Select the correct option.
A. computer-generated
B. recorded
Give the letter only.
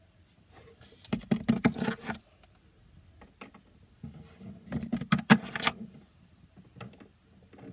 B